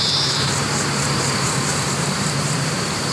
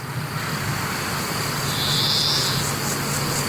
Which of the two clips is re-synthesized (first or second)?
first